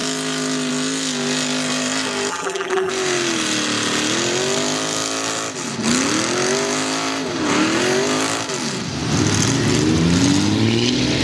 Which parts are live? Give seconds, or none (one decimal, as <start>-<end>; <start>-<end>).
0.0-2.3; 2.9-11.2